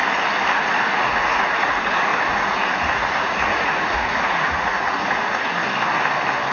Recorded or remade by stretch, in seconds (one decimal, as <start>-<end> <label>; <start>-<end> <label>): 0.0-0.5 recorded; 0.5-5.6 remade; 5.6-6.5 recorded